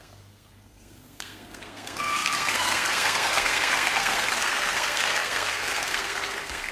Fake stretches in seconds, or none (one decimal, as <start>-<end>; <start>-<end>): 0.0-6.7